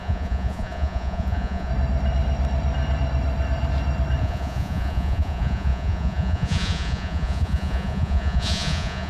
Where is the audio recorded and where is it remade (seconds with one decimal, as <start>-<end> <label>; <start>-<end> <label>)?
0.0-1.7 remade; 1.7-4.2 recorded; 4.2-9.1 remade